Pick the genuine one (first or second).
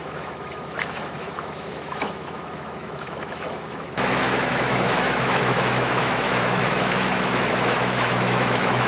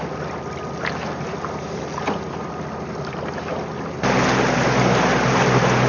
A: second